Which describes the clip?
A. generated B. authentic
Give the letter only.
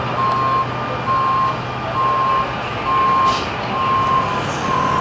B